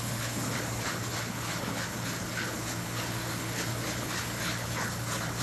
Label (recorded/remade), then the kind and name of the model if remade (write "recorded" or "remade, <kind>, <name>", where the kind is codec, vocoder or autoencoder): remade, codec, HILCodec